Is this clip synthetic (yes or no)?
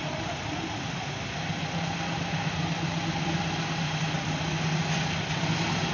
no